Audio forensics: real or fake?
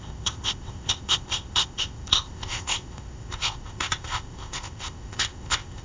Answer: fake